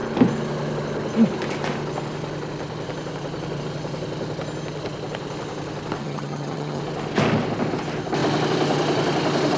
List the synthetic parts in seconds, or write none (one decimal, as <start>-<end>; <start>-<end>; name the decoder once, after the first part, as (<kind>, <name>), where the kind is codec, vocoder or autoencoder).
6.0-6.8 (vocoder, HiFi-GAN)

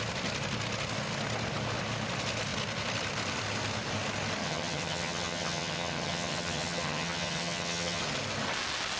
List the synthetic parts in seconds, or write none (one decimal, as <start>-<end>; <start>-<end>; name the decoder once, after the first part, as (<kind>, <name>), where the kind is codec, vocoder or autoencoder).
4.4-8.0 (vocoder, HiFi-GAN)

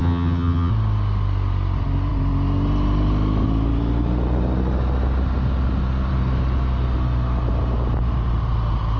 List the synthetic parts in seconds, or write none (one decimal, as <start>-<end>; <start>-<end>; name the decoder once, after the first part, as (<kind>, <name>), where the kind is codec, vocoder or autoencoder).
0.0-0.7 (vocoder, HiFi-GAN)